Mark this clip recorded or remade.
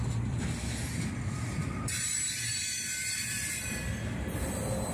remade